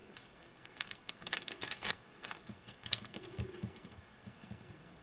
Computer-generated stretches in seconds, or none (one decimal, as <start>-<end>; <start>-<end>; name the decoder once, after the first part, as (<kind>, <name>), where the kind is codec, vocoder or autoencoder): 0.0-5.0 (codec, SNAC)

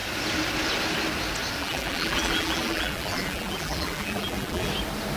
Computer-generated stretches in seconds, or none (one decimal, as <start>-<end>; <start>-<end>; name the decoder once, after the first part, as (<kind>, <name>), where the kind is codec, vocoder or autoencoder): 1.6-4.7 (vocoder, BigVGAN v2)

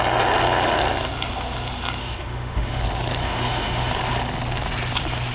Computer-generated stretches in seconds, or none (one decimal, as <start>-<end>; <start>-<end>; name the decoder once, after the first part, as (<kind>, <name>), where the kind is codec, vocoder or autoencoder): 2.0-2.8 (autoencoder, DAC-VAE); 3.2-3.9

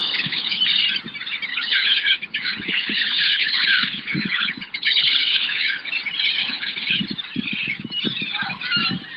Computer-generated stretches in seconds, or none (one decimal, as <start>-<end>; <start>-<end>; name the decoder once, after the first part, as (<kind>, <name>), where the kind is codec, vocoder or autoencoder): 0.0-0.6 (codec, HILCodec); 1.5-5.9; 6.4-7.0

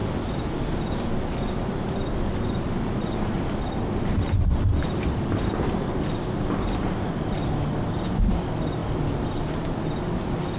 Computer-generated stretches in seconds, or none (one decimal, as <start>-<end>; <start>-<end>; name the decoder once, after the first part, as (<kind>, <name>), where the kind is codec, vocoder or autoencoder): 2.1-4.7 (vocoder, BigVGAN v2); 7.4-10.6

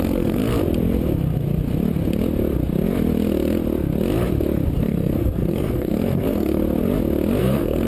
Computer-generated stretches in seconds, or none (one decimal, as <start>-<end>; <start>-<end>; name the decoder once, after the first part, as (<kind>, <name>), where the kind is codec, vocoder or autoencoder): 0.0-0.4 (codec, SNAC); 4.8-6.6; 7.4-7.9